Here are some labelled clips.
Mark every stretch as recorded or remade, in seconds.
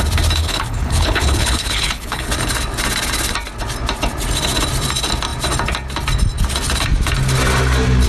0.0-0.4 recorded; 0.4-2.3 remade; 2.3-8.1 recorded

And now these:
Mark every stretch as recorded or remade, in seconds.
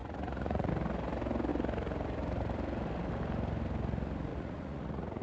0.0-0.7 remade; 0.7-4.3 recorded; 4.3-5.2 remade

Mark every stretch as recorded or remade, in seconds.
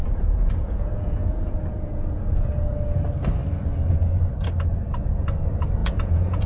0.0-2.6 remade; 2.6-5.8 recorded; 5.8-6.5 remade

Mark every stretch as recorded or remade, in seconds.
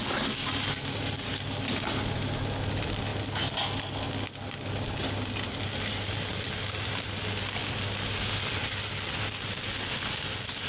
0.0-10.7 recorded